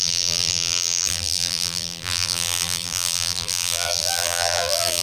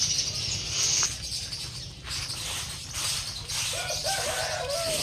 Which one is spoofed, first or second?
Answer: first